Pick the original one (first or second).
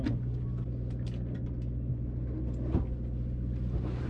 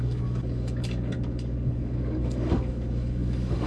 first